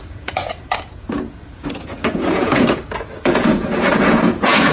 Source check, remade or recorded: remade